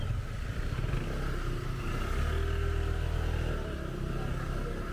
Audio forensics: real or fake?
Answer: real